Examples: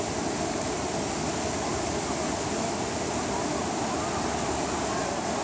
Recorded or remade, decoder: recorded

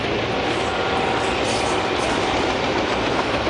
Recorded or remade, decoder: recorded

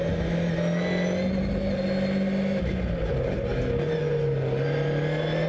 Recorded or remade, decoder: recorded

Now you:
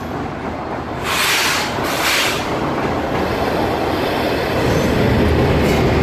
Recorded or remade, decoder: recorded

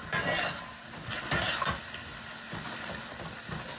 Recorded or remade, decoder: recorded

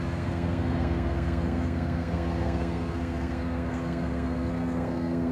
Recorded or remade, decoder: remade, codec, SNAC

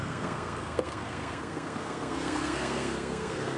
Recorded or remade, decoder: remade, codec, SNAC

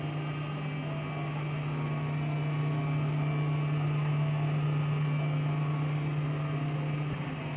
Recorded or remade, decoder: recorded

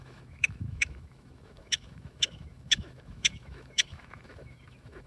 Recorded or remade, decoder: remade, autoencoder, DAC-VAE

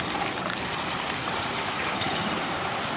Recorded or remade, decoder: remade, vocoder, BigVGAN v2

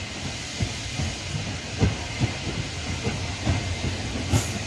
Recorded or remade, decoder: recorded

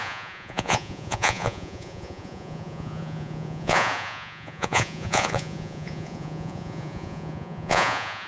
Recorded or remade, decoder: remade, vocoder, Vocos